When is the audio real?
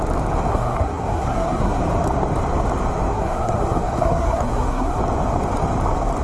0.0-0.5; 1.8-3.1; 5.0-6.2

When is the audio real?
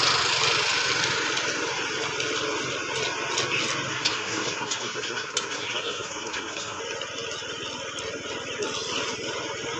0.0-3.9; 6.8-9.8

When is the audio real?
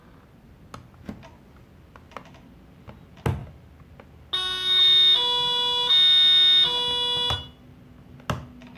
0.0-8.8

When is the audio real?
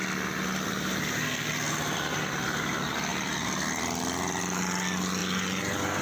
0.0-6.0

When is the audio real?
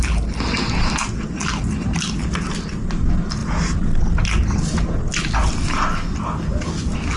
0.0-7.2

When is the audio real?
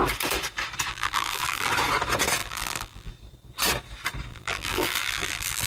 0.0-0.9; 1.7-2.4; 3.1-4.3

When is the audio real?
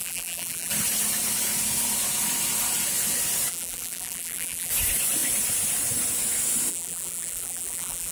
0.7-3.5; 4.7-6.7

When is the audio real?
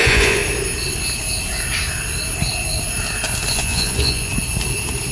0.4-3.5; 4.3-5.1